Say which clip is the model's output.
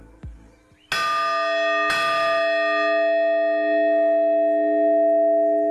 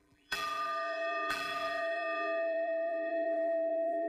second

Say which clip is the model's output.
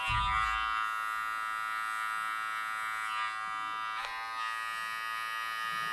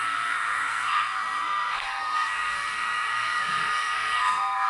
second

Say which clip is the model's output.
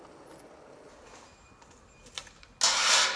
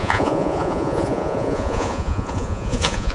second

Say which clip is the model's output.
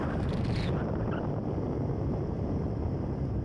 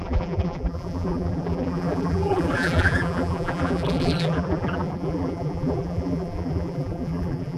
second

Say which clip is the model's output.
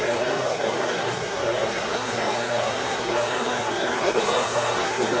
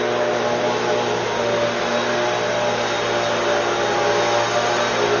first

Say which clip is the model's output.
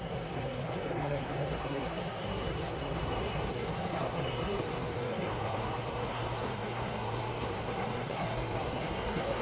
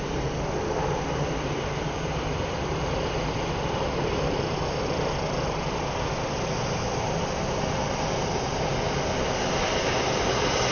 first